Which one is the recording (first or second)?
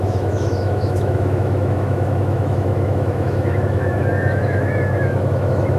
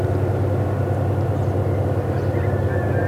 second